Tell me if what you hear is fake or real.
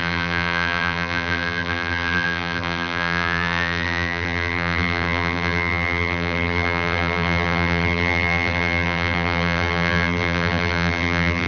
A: fake